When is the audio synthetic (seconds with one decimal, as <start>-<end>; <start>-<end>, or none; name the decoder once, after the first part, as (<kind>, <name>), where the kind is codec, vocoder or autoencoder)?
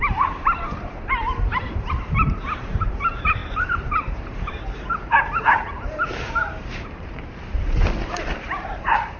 0.0-9.2 (vocoder, BigVGAN v2)